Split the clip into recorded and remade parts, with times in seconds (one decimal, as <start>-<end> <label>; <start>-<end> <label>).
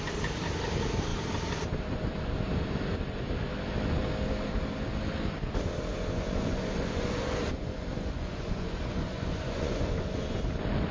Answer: 0.0-5.9 recorded; 5.9-10.4 remade; 10.4-10.9 recorded